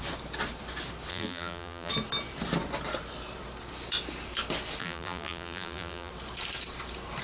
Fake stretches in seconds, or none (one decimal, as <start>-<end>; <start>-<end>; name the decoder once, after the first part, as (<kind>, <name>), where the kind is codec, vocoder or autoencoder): 1.1-1.9 (vocoder, BigVGAN v2); 4.8-6.1